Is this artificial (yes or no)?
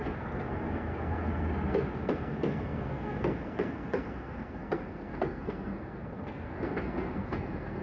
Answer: yes